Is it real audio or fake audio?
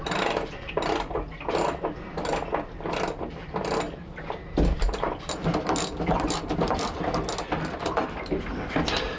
real